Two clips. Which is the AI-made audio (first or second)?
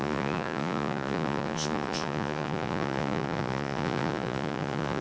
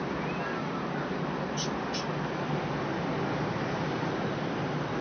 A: first